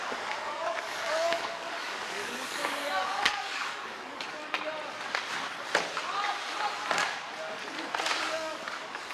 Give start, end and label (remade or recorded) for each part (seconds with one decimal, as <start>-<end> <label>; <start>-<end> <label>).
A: 0.0-4.4 remade; 4.4-8.2 recorded; 8.2-9.1 remade